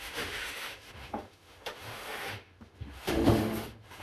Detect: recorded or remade remade